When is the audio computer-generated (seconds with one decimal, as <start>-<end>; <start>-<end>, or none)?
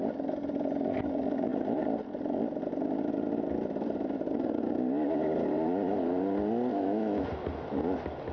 6.7-7.3